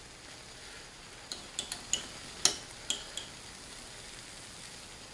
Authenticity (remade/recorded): recorded